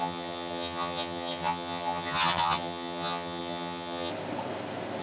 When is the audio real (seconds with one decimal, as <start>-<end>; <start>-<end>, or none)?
4.1-5.0